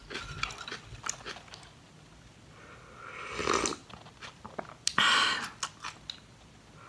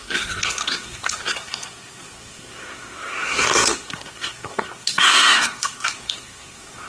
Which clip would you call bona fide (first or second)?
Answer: first